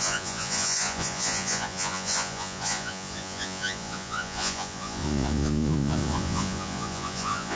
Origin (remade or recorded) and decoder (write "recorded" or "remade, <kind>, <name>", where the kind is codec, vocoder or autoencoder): remade, vocoder, Vocos